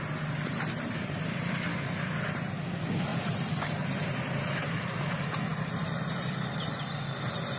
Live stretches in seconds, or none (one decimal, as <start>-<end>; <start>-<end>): 0.0-3.1; 4.2-7.6